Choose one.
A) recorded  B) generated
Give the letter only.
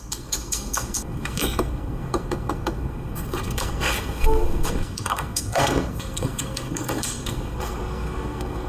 B